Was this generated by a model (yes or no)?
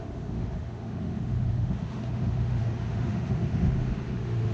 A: yes